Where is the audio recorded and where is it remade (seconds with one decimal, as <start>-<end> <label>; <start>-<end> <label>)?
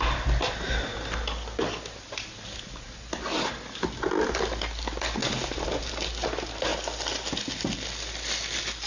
0.0-8.9 recorded